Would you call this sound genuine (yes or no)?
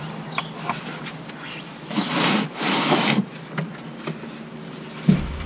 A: yes